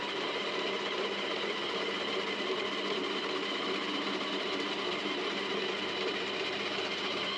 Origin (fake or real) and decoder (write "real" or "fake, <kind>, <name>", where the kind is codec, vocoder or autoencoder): real